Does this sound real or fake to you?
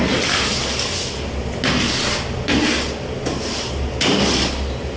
real